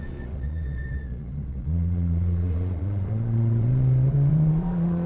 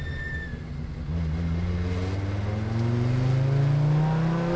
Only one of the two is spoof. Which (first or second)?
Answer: first